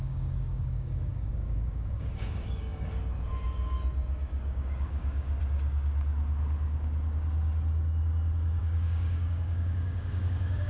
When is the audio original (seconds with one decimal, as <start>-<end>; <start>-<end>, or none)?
5.4-8.6

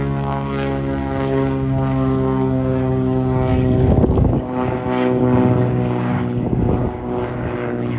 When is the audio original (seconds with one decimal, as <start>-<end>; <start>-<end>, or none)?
none